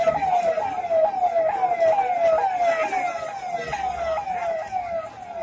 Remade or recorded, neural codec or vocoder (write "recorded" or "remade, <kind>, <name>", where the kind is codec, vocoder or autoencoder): recorded